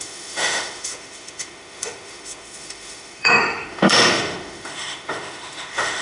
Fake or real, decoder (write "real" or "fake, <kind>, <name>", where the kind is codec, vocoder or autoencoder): fake, autoencoder, DAC-VAE